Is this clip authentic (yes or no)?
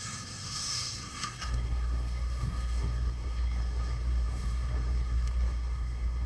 no